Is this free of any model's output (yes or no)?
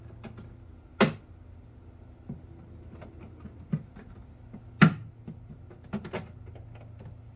yes